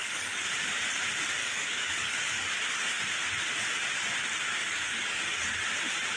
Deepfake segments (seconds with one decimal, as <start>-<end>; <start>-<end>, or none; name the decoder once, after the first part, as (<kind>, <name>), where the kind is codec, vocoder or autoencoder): 0.0-0.5 (codec, DAC); 1.4-2.5; 4.6-5.4